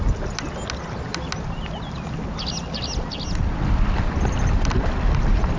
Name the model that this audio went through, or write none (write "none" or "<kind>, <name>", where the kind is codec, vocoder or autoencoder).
none